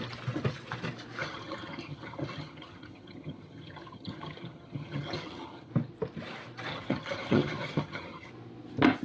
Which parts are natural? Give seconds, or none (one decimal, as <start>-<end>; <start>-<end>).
0.0-1.2; 5.7-6.7; 8.3-9.0